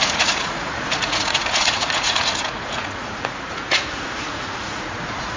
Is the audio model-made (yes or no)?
yes